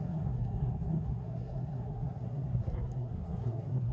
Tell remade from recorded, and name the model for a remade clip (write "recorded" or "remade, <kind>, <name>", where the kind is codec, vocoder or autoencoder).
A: remade, codec, SNAC